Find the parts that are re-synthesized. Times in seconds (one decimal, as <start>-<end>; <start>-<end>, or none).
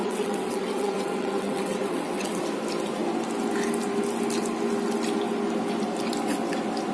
0.0-2.4